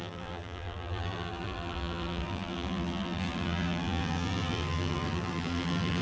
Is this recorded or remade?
remade